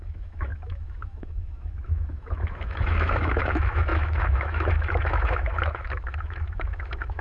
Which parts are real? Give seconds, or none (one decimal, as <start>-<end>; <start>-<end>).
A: none